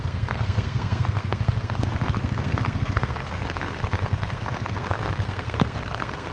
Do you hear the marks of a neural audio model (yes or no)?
yes